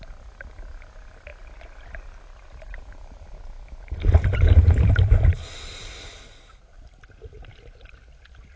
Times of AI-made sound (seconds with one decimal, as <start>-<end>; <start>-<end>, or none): none